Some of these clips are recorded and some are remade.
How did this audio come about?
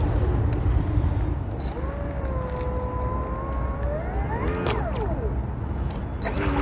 recorded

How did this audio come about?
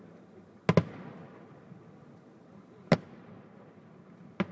recorded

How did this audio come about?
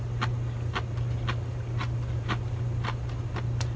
recorded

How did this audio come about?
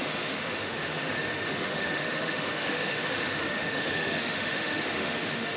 remade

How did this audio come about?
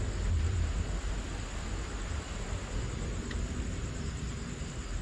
recorded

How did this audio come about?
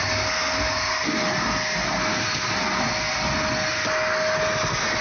recorded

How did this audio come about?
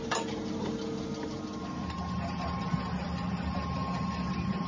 recorded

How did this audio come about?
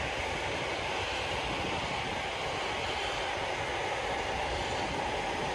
recorded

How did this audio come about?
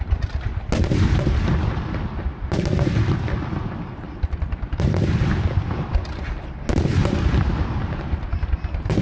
recorded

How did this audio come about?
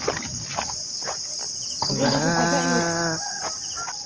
recorded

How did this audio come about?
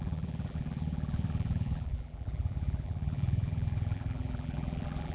remade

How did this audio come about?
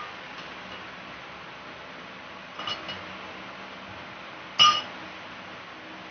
recorded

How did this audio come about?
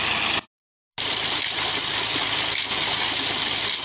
recorded